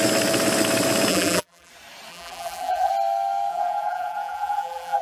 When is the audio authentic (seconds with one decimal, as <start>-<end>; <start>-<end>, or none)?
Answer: 0.0-1.1; 1.7-2.1; 2.9-3.5